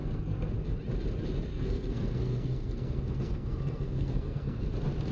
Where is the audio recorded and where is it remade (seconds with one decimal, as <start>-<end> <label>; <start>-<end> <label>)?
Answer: 0.0-0.5 remade; 0.5-1.5 recorded; 1.5-4.6 remade; 4.6-5.1 recorded